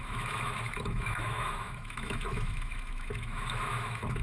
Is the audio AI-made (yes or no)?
yes